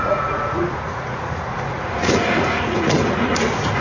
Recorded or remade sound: remade